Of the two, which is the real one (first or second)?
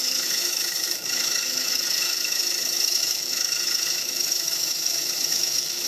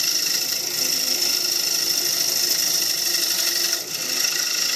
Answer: second